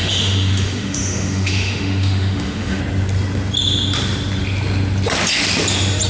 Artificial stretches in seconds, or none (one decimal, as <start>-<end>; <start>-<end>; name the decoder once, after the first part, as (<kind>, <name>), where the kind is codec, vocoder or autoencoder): 0.0-2.8 (autoencoder, DAC-VAE)